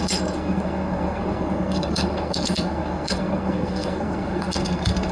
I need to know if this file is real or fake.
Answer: fake